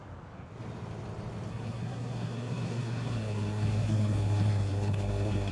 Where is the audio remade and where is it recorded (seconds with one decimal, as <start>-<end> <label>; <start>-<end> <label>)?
0.0-1.5 recorded; 1.5-5.5 remade